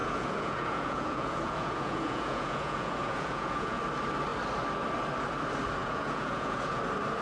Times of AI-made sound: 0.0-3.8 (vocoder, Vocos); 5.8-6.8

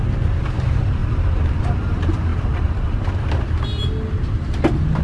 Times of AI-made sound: 1.0-1.6 (vocoder, BigVGAN v2); 2.3-3.4

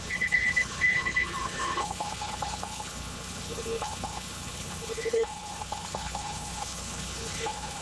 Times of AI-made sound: 0.0-7.8 (codec, HILCodec)

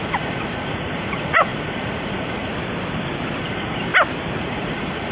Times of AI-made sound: 0.0-2.5 (vocoder, Vocos); 3.4-3.9; 4.4-5.1

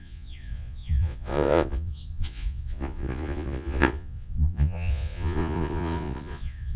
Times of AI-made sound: 0.0-6.8 (vocoder, Vocos)

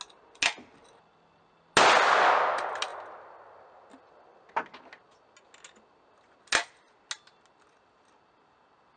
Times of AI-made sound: none

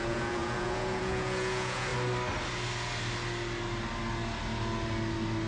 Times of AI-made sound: 0.0-1.9 (vocoder, Vocos)